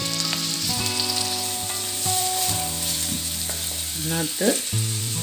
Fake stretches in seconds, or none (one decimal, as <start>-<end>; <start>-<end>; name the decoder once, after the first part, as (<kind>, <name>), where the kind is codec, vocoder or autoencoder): 0.5-4.0 (vocoder, BigVGAN v2); 4.7-5.2

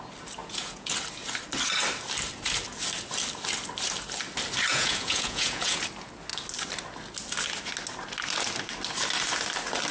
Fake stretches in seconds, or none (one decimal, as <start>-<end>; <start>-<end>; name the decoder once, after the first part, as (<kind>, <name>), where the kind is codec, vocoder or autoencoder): 0.4-0.9 (vocoder, Vocos); 4.7-5.8